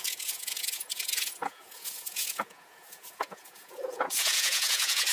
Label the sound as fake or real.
fake